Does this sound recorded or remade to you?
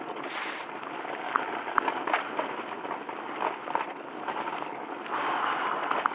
recorded